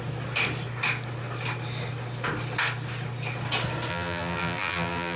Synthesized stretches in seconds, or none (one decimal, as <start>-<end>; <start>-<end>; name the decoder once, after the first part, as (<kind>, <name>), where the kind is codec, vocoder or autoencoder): 3.9-5.2 (vocoder, BigVGAN v2)